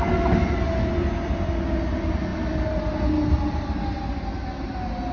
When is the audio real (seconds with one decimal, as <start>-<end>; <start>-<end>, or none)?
0.0-5.1

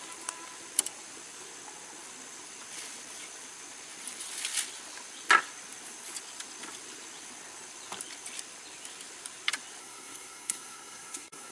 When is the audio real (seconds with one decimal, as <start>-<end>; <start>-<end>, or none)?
0.0-9.8

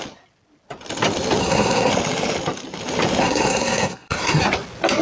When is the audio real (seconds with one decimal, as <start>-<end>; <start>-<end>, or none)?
0.0-1.4; 1.9-3.2; 4.4-5.0

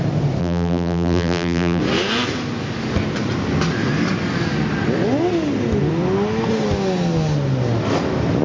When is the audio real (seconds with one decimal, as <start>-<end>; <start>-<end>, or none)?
0.0-0.4; 1.8-8.4